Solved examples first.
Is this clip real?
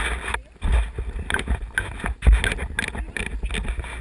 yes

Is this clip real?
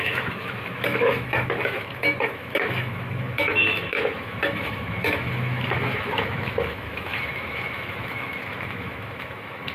no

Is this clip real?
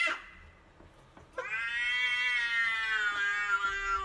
yes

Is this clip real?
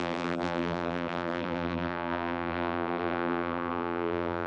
no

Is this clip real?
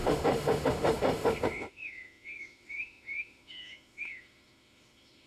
no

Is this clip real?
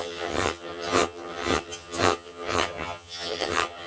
no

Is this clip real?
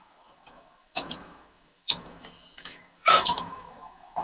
no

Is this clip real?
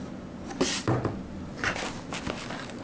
yes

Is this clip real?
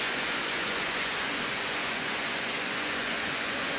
no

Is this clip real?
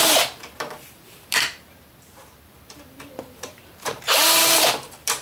no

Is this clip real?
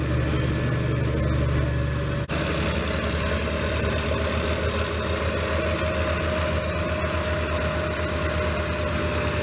yes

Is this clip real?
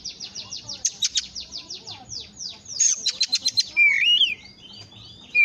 no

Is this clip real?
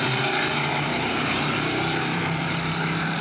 no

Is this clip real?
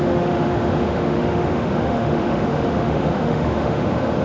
no